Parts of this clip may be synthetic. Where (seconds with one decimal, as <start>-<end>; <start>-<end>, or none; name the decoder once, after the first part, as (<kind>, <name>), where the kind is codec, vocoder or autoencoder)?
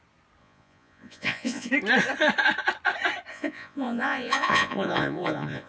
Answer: 0.4-1.7 (vocoder, Vocos); 3.3-5.7